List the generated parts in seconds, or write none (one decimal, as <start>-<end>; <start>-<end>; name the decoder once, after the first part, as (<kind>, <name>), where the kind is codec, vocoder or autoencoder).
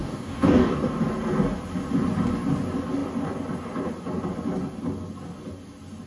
0.0-1.0 (codec, DAC)